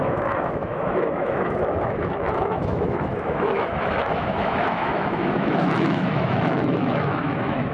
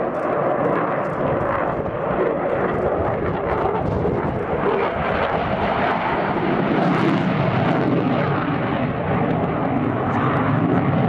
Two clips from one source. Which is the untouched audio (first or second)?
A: second